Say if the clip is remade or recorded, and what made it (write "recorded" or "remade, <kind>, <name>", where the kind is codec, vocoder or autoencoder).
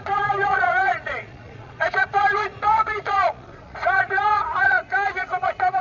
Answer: remade, vocoder, Vocos